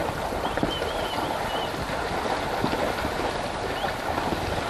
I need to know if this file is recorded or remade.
recorded